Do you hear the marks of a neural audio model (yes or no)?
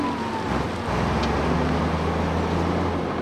no